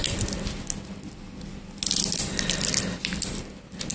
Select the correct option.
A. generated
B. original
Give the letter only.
B